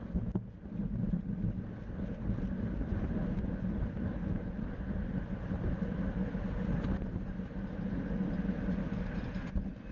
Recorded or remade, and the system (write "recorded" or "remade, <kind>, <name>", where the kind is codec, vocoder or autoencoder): recorded